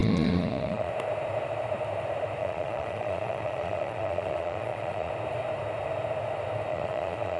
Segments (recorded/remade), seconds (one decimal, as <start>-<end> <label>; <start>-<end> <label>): 0.0-0.9 remade; 0.9-2.4 recorded; 2.4-5.1 remade; 5.1-6.7 recorded; 6.7-7.4 remade